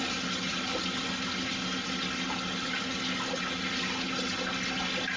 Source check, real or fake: real